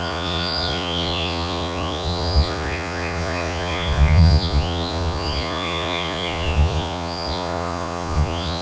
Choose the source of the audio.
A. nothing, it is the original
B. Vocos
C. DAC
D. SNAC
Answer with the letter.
B